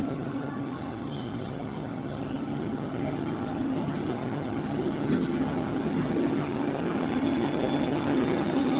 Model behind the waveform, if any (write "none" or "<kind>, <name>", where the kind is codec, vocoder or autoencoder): vocoder, HiFi-GAN